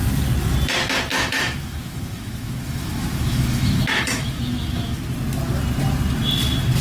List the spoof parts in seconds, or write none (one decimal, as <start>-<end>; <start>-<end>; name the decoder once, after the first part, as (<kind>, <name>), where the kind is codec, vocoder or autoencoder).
1.1-5.0 (autoencoder, DAC-VAE)